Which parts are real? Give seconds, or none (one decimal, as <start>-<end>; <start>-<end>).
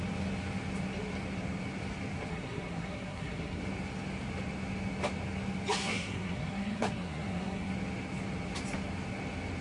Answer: 0.0-2.3; 3.6-5.8; 7.7-9.6